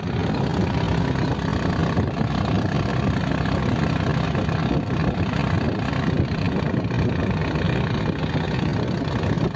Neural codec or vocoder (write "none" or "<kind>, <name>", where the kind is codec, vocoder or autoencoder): none